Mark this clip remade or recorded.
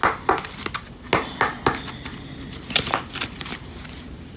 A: recorded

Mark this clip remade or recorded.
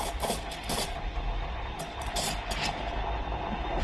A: recorded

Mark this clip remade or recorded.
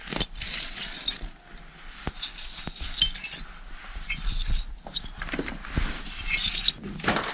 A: recorded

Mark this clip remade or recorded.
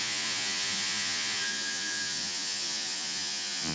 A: remade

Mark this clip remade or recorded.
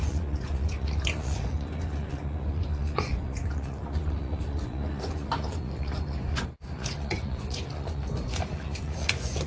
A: remade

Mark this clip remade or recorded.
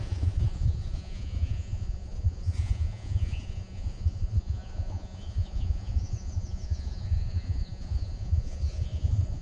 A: remade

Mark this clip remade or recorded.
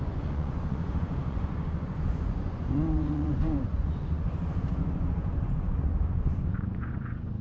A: remade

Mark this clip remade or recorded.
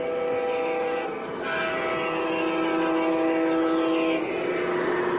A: recorded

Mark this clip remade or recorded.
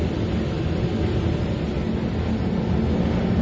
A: recorded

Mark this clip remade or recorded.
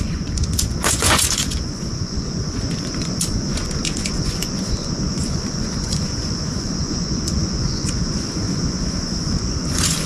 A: remade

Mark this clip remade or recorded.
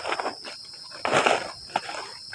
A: recorded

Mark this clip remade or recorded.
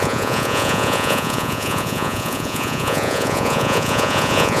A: remade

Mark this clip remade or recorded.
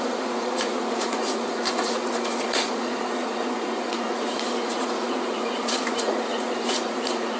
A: remade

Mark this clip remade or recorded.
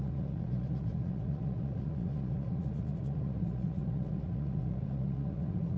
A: remade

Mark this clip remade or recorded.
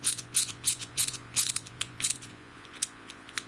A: remade